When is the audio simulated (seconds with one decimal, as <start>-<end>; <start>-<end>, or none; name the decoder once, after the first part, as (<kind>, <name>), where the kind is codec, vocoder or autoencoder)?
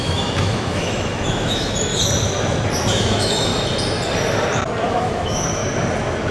0.0-1.9 (autoencoder, DAC-VAE); 2.9-3.5; 4.9-5.6